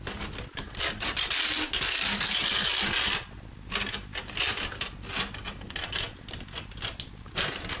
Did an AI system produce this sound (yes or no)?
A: no